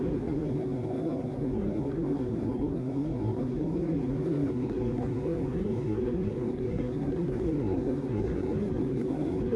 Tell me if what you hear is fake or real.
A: fake